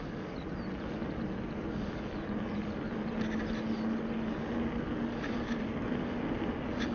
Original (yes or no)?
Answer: yes